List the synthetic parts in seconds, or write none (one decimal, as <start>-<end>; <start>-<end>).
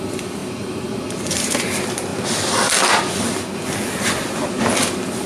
0.4-1.7